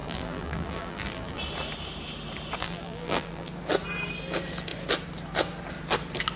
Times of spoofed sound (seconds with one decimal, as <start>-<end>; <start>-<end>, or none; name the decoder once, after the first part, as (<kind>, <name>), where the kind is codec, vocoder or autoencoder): 0.0-1.4 (vocoder, BigVGAN v2); 2.6-3.5